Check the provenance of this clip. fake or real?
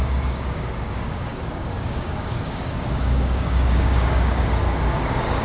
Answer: fake